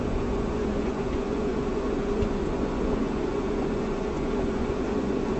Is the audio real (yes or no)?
no